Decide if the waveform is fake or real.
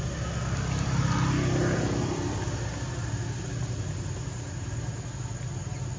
real